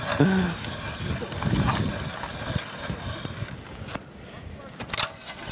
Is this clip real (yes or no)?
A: yes